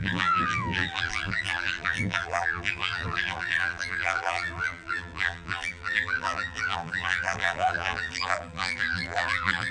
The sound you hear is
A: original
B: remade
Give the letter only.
B